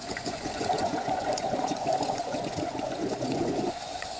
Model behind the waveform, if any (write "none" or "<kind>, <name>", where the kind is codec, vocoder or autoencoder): vocoder, Vocos